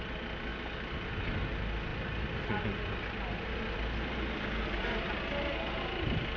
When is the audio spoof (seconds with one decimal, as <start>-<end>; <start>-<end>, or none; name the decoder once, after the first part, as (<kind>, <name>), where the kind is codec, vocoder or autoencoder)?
none